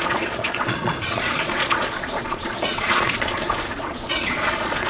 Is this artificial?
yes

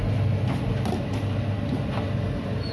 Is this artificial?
no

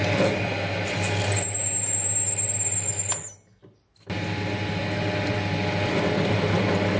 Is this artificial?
no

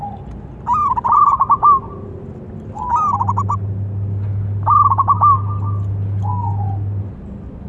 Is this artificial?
no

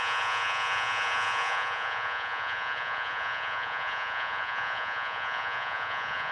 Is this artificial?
yes